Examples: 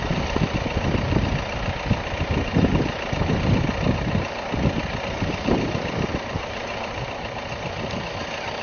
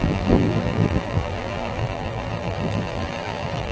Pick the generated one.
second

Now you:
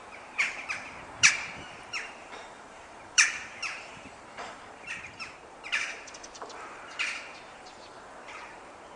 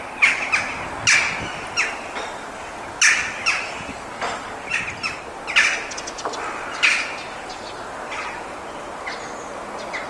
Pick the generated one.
first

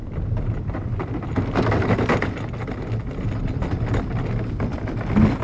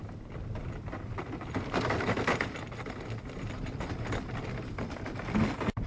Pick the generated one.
second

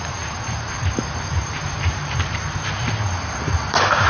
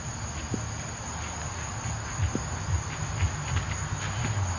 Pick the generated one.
first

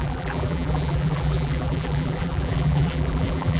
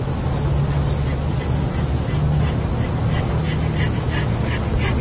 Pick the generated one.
first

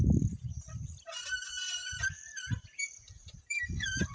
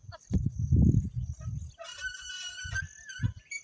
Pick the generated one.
first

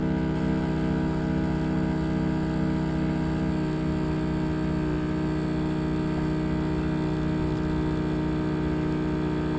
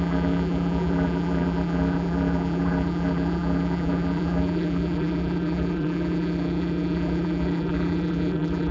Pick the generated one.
second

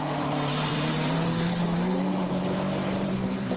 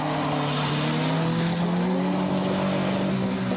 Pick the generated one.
first